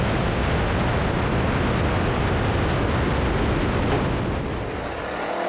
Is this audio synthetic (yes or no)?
no